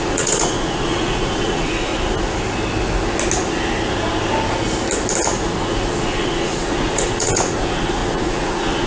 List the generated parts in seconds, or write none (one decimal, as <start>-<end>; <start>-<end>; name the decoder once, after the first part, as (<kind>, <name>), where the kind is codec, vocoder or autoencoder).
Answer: 0.0-1.9 (vocoder, Vocos); 5.6-8.9